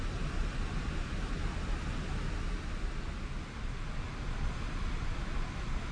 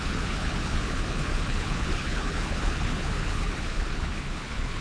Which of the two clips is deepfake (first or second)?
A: second